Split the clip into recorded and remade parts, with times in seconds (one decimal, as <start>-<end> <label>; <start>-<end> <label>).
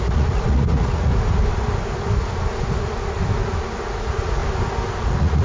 0.0-1.1 remade; 1.1-3.9 recorded; 3.9-4.4 remade; 4.4-5.0 recorded; 5.0-5.4 remade